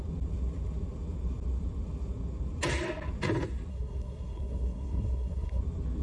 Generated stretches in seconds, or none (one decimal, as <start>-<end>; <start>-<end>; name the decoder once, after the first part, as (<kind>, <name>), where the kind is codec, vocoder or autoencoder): 3.7-5.6 (codec, SNAC)